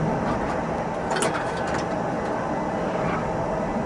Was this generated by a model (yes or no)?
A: no